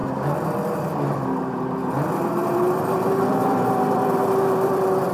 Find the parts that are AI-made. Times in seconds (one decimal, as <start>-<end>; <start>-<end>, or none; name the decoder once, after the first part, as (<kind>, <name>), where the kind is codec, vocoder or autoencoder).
0.0-5.1 (vocoder, BigVGAN v2)

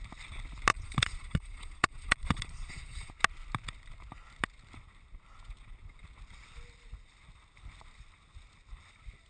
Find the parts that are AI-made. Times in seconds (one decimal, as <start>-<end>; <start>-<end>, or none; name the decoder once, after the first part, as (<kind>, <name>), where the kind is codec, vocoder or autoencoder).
0.7-3.1 (vocoder, Vocos)

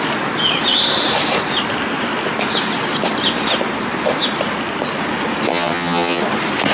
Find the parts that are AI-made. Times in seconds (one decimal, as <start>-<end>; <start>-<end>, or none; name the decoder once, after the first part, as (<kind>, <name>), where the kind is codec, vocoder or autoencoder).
5.5-6.2 (vocoder, HiFi-GAN)

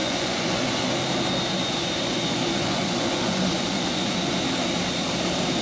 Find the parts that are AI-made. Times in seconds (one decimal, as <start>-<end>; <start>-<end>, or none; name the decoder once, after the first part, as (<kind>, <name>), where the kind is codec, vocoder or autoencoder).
0.0-0.9 (vocoder, Vocos); 1.5-4.3

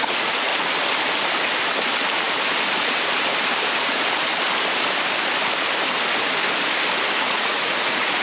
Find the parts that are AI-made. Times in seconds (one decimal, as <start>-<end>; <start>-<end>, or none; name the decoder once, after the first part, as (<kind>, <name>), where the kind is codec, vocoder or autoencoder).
0.0-0.5 (vocoder, Vocos); 3.8-4.3; 7.2-8.2

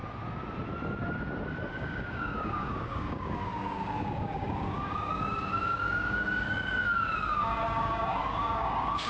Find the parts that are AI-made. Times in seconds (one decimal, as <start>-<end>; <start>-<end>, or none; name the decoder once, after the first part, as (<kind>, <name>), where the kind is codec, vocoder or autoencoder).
1.7-9.1 (codec, DAC)

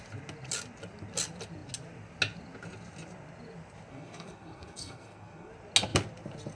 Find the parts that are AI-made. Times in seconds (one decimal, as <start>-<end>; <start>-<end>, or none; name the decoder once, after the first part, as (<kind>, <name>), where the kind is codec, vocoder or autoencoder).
3.9-5.5 (codec, SNAC)